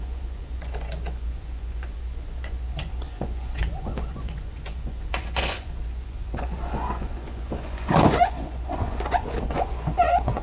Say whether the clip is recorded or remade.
remade